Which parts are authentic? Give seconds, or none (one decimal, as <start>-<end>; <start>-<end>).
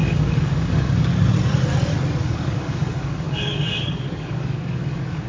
1.1-2.2